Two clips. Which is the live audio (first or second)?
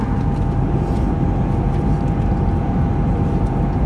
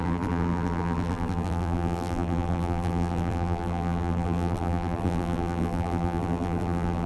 first